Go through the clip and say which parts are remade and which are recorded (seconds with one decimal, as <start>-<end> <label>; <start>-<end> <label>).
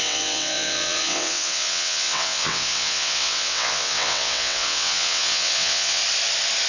0.0-6.0 remade; 6.0-6.7 recorded